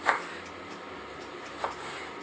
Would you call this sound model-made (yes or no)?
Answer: no